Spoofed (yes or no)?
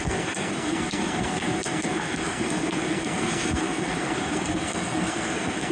yes